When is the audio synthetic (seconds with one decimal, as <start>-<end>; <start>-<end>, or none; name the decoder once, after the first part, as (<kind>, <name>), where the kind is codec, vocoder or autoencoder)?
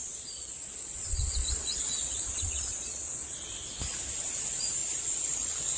0.0-3.5 (vocoder, Vocos); 4.8-5.8